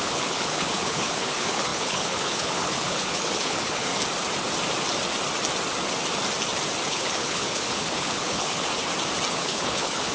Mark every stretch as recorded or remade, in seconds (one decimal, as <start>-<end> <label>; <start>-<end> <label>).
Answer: 0.0-3.9 remade; 3.9-6.9 recorded; 6.9-8.7 remade; 8.7-9.3 recorded; 9.3-10.1 remade